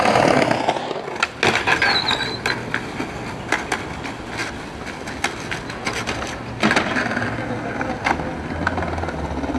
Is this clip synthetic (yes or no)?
no